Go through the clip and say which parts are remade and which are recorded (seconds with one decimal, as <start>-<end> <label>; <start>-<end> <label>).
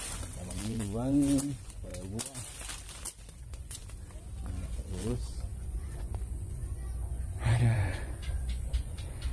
0.0-1.9 remade; 1.9-3.4 recorded; 3.4-3.8 remade; 3.8-4.4 recorded; 4.4-9.3 remade